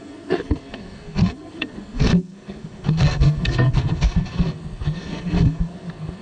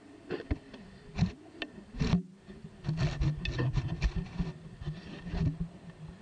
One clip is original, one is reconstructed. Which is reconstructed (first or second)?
first